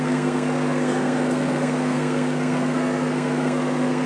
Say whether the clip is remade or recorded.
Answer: remade